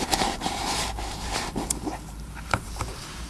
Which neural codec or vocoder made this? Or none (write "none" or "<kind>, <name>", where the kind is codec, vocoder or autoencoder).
vocoder, BigVGAN v2